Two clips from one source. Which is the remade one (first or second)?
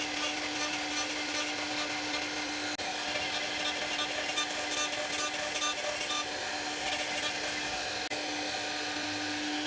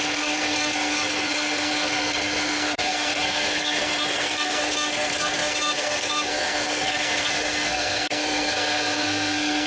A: second